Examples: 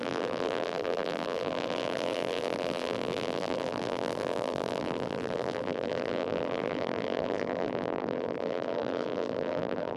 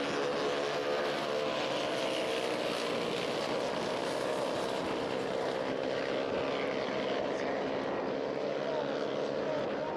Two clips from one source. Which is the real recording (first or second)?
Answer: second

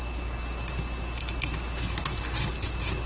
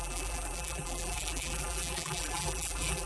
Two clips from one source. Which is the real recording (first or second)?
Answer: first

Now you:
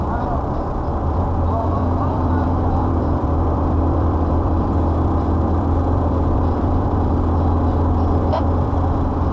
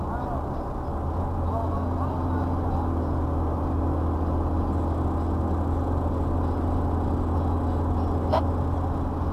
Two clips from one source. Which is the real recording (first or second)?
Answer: second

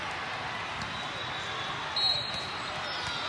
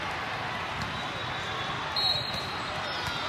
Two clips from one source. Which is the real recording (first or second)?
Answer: first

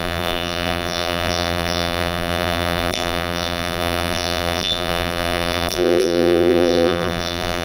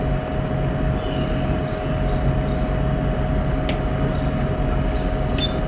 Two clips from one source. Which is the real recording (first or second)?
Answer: second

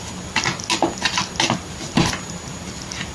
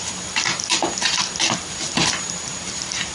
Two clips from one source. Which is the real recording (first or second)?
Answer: first